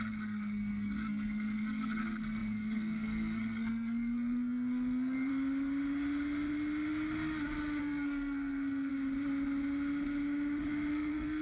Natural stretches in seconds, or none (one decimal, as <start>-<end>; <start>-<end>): 5.3-7.8; 8.9-10.9